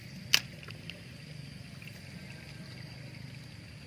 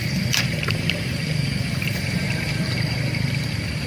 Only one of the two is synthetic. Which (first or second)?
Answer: second